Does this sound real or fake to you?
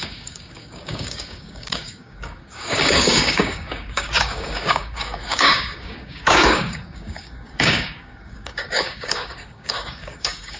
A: fake